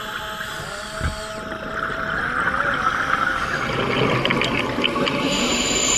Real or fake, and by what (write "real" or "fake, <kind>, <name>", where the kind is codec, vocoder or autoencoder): real